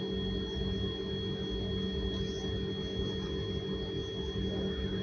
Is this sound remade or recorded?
recorded